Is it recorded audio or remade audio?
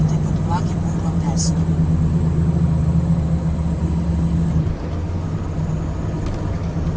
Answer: recorded